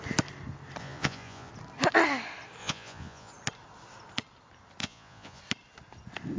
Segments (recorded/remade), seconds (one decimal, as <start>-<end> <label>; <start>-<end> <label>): 0.0-0.8 recorded; 0.8-1.5 remade; 1.5-2.6 recorded; 2.6-3.3 remade; 3.3-4.8 recorded; 4.8-5.4 remade; 5.4-6.4 recorded